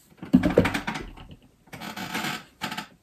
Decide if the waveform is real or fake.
real